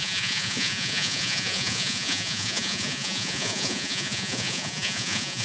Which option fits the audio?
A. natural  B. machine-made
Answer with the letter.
B